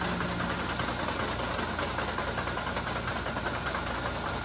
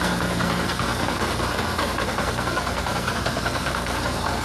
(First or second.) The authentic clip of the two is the first